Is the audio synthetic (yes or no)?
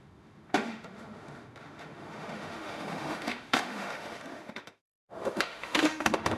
yes